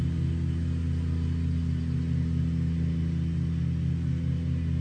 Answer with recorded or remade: recorded